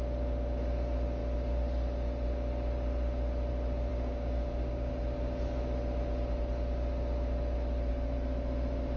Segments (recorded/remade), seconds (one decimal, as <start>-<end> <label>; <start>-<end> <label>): 0.0-3.9 recorded; 3.9-4.9 remade; 4.9-9.0 recorded